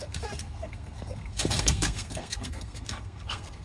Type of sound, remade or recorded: remade